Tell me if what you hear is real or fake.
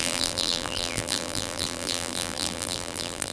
fake